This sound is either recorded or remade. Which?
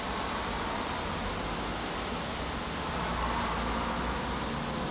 recorded